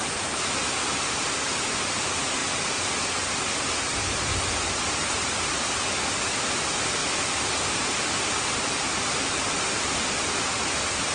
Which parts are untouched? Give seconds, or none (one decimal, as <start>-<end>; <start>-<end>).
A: 0.0-11.1